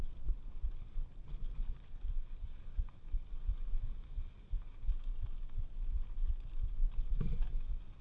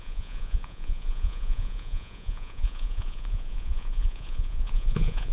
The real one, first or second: first